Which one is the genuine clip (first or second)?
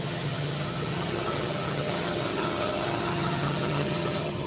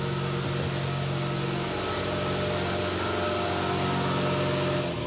second